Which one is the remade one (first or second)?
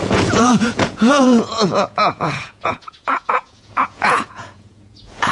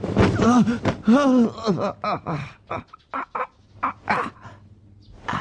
first